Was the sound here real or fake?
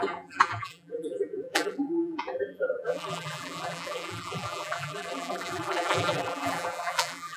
fake